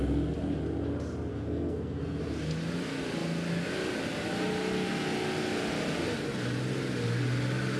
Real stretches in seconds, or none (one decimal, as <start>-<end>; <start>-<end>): 0.0-1.3; 2.2-7.8